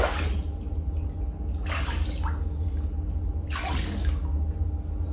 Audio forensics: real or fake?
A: real